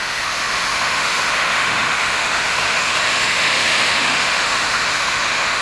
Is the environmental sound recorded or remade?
remade